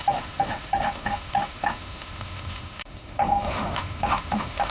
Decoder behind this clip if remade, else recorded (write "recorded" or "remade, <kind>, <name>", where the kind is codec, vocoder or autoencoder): remade, autoencoder, DAC-VAE